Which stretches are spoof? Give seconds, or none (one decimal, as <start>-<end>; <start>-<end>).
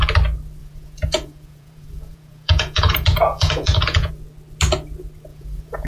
0.6-4.1; 5.3-5.9